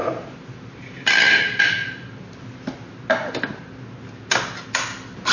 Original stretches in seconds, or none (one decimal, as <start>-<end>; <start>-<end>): 2.4-5.3

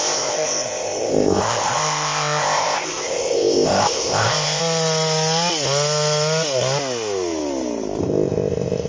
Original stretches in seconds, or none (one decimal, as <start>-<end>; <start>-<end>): 4.6-8.0

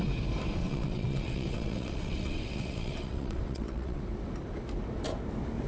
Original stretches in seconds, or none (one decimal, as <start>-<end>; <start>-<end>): 0.0-0.6; 4.0-5.7

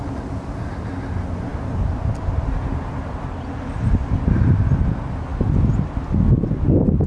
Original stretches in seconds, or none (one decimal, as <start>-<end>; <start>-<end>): 0.0-7.1

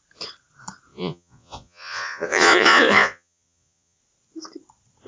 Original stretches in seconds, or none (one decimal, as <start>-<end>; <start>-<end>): 0.0-0.9; 4.0-5.1

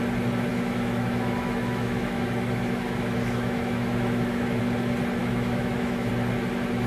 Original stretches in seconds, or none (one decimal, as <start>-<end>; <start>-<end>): 0.0-0.5; 4.6-5.2; 6.1-6.9